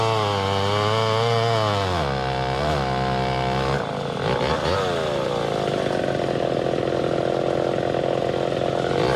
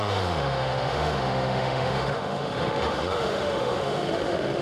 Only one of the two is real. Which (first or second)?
first